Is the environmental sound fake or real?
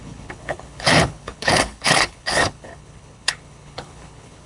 fake